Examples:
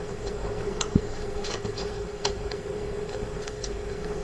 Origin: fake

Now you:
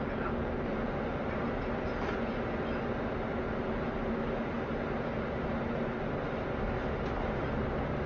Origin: real